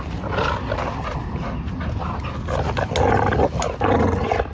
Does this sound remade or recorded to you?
recorded